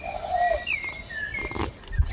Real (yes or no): yes